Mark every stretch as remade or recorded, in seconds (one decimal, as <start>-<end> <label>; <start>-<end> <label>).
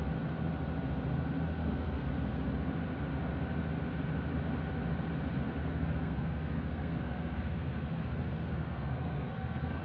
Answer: 0.0-1.6 recorded; 1.6-2.1 remade; 2.1-5.6 recorded; 5.6-9.8 remade